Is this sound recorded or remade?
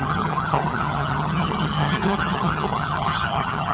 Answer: remade